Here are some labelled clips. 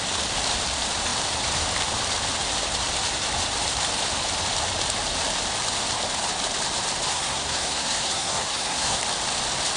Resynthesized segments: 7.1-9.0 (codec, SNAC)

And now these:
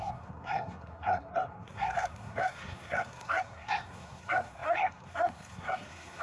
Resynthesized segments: 0.0-6.2 (codec, SNAC)

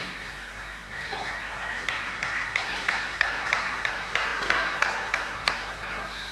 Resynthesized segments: 0.0-6.3 (codec, SNAC)

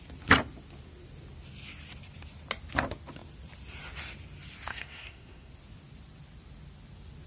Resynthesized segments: 4.7-5.5 (codec, SNAC)

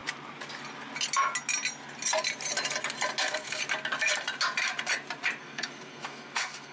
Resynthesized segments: 3.2-3.6 (codec, SNAC); 5.4-6.7

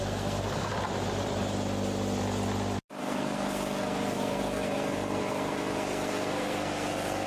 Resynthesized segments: 0.0-0.7 (codec, SNAC); 3.0-7.3

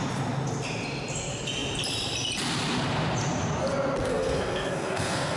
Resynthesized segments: 4.1-5.4 (codec, SNAC)

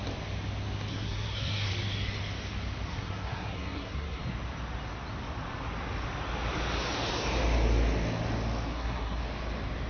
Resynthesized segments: 0.9-1.7 (codec, SNAC); 2.9-4.2; 8.7-9.2